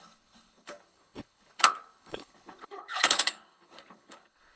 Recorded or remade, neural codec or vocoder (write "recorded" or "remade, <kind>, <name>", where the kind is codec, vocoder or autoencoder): remade, codec, HILCodec